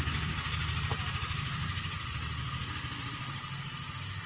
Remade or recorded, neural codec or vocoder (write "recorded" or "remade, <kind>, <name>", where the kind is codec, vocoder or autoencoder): recorded